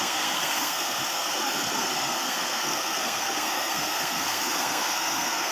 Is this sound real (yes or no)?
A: no